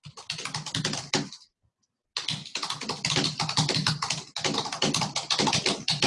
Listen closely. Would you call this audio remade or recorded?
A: recorded